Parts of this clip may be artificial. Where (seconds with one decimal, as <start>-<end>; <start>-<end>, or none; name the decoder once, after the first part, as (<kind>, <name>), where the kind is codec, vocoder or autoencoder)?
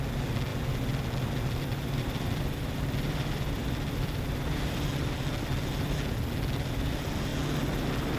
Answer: 0.5-4.9 (vocoder, BigVGAN v2)